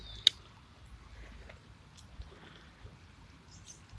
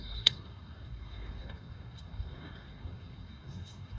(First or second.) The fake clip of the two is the second